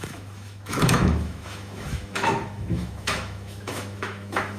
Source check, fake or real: fake